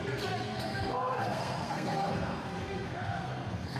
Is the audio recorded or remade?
remade